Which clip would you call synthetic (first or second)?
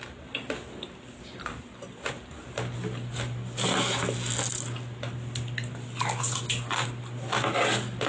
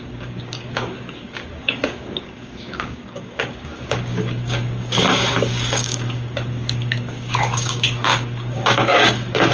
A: second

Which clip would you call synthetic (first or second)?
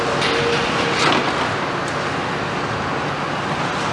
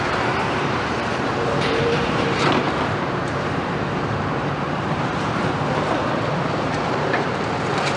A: second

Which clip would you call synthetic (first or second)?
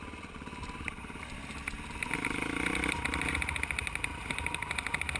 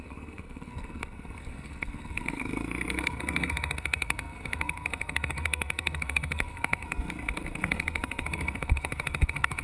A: second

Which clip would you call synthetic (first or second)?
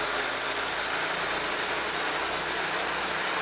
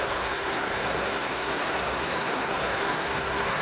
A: second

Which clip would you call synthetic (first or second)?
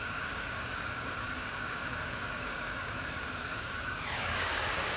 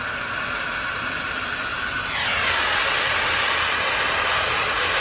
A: first